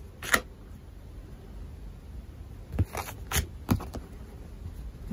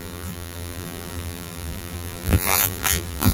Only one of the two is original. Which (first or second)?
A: first